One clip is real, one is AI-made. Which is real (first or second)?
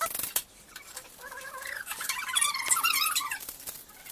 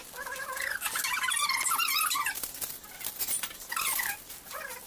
second